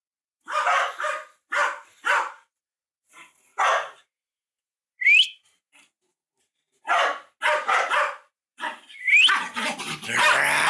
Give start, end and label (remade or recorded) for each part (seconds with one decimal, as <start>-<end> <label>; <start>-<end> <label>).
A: 0.0-3.5 remade; 3.5-7.7 recorded; 7.7-10.7 remade